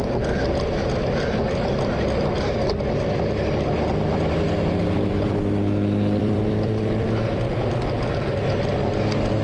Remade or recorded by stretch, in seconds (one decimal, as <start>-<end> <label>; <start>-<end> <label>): 0.0-6.2 recorded; 6.2-8.5 remade; 8.5-9.4 recorded